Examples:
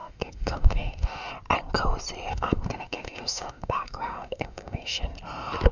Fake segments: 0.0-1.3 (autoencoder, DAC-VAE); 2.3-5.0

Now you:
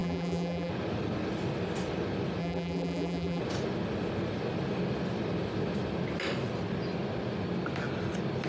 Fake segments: 0.0-0.7 (vocoder, BigVGAN v2); 2.4-3.4

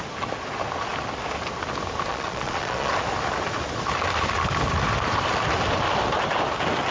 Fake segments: 2.1-2.9 (vocoder, Vocos)

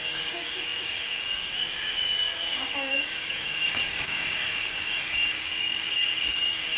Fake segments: 0.0-6.8 (codec, DAC)